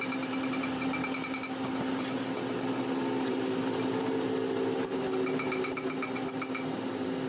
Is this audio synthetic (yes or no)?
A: no